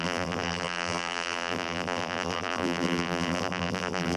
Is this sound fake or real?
fake